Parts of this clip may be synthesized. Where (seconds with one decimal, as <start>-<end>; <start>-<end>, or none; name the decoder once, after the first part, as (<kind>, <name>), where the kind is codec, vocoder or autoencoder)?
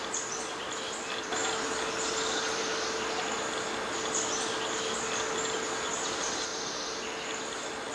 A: none